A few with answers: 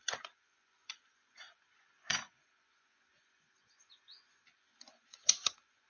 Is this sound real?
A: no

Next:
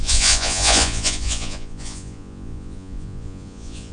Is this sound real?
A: no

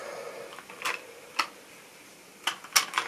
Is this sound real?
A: yes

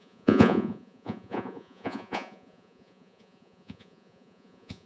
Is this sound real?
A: no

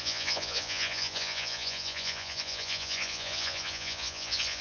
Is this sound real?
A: no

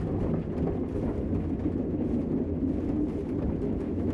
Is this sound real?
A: yes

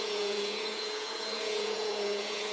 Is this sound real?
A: no